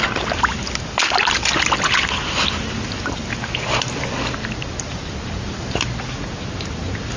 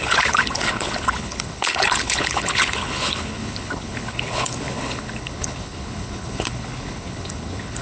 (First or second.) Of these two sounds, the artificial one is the second